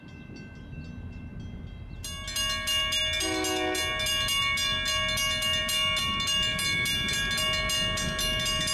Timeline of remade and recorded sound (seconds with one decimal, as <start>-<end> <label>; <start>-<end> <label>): 0.0-8.7 recorded